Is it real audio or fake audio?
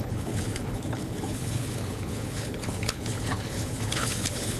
fake